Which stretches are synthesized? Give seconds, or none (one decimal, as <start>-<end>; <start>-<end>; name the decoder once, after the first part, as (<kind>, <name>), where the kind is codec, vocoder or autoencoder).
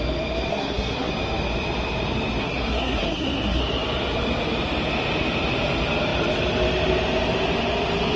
0.5-1.1 (codec, SNAC); 2.4-3.6